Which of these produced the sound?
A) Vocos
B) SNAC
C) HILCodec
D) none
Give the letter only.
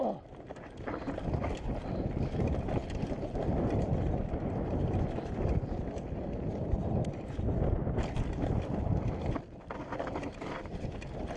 D